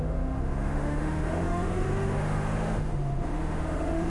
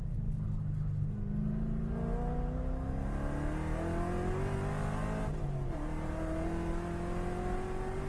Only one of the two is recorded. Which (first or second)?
second